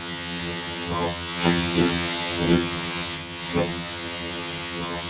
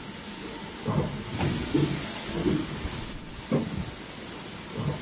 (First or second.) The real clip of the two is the second